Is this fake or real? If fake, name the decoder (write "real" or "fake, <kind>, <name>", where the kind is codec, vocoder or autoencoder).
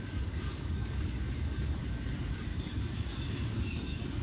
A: fake, codec, DAC